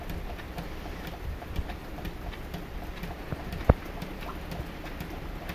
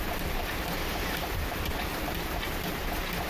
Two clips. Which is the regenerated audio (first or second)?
second